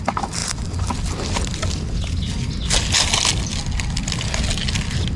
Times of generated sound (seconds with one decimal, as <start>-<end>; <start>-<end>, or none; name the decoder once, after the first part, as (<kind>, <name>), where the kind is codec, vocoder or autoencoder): none